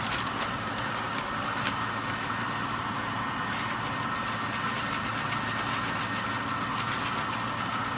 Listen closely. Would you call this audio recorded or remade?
recorded